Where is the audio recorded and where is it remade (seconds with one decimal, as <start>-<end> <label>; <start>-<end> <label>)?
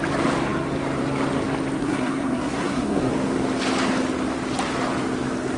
0.0-1.8 recorded; 1.8-3.1 remade; 3.1-5.6 recorded